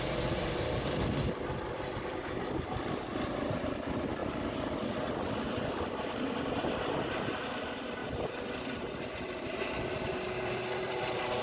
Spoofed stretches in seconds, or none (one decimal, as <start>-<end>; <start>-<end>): 0.0-11.4